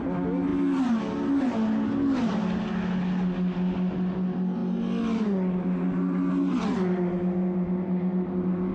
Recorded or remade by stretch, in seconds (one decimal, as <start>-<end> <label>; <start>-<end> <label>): 0.0-8.7 recorded